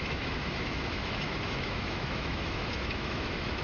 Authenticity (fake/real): fake